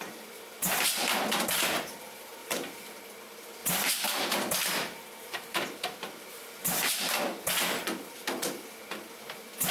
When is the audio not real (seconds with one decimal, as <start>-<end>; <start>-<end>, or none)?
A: 2.4-3.0; 3.6-7.2